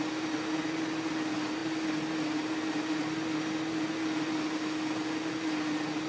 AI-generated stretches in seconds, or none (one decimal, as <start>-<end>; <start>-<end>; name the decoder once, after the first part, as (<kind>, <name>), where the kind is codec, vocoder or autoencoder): none